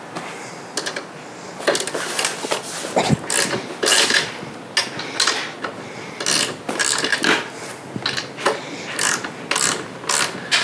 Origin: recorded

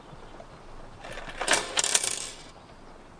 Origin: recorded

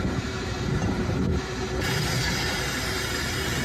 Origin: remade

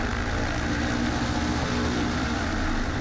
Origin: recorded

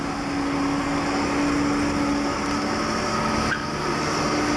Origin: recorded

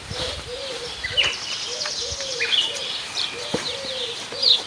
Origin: remade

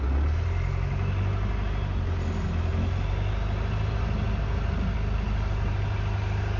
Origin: recorded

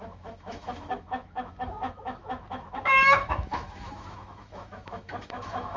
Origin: remade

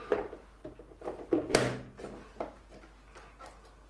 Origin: recorded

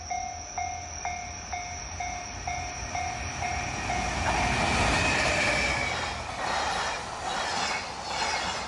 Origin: recorded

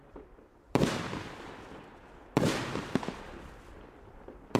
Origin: remade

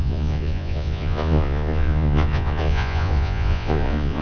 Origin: remade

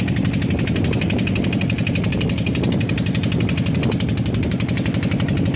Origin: recorded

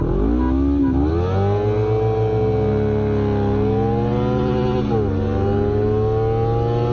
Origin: recorded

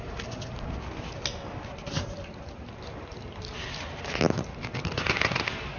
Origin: recorded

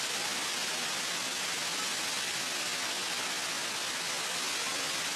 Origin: recorded